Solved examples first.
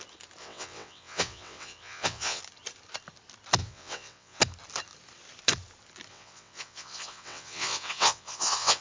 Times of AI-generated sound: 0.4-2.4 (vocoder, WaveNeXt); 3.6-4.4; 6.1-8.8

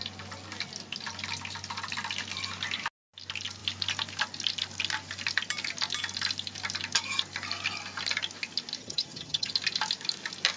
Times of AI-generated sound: 8.8-9.5 (vocoder, HiFi-GAN)

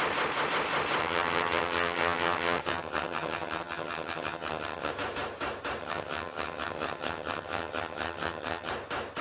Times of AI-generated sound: 1.0-4.9 (vocoder, HiFi-GAN); 5.8-8.7

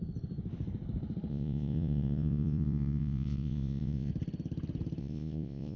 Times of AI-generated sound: 1.3-4.1 (vocoder, Vocos); 5.0-5.8

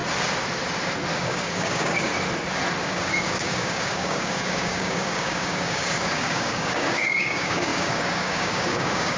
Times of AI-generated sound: 1.1-2.1 (codec, DAC); 2.8-9.2